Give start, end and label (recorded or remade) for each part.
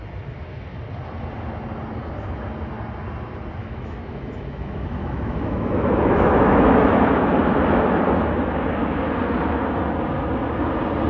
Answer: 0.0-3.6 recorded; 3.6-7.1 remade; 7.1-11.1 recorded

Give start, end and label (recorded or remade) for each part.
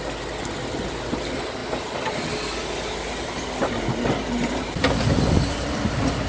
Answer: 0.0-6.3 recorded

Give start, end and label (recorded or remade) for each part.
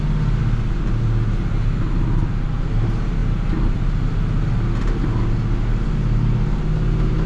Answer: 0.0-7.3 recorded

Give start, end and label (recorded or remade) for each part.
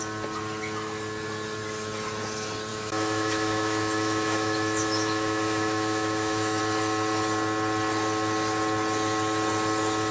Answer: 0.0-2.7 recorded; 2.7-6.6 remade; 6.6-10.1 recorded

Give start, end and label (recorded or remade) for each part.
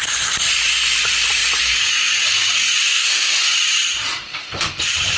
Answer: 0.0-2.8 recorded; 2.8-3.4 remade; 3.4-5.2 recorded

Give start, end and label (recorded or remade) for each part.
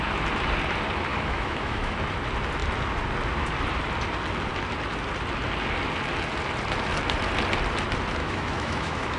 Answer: 0.0-1.1 recorded; 1.1-1.9 remade; 1.9-8.2 recorded; 8.2-9.2 remade